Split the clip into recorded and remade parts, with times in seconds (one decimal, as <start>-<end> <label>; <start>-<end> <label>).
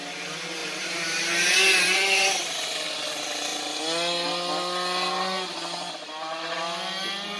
0.0-0.6 recorded; 0.6-2.4 remade; 2.4-7.4 recorded